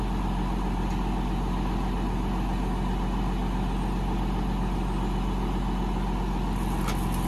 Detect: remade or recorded recorded